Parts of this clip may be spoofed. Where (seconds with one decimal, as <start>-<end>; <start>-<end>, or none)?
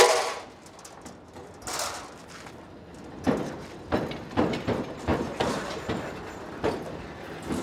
none